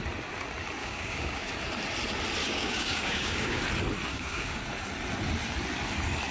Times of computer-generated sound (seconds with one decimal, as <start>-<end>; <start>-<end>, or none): 0.8-1.5; 2.4-3.6; 4.1-4.6